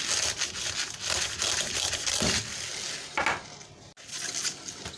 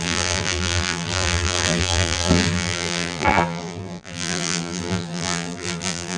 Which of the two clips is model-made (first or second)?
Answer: second